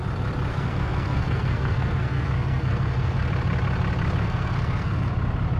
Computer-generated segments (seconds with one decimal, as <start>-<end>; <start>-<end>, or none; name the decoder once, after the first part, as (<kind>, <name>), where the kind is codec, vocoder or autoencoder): 0.5-3.3 (codec, SNAC); 4.2-5.0